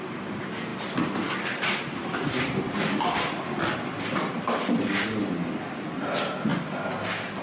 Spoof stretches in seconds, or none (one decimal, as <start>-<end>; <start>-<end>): 0.7-4.9